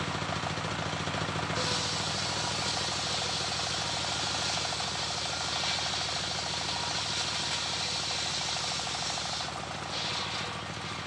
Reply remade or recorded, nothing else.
recorded